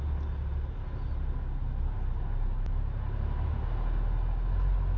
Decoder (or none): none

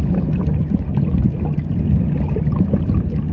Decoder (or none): none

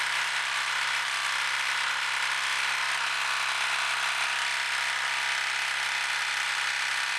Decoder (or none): none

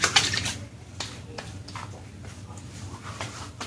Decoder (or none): none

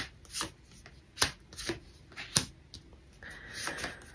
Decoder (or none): none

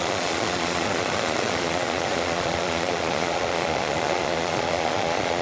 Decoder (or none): vocoder, Vocos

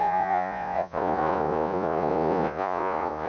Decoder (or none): vocoder, Vocos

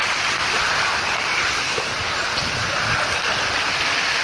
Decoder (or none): none